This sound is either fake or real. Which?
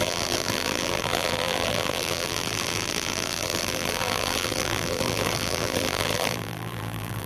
fake